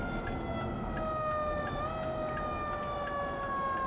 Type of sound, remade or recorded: recorded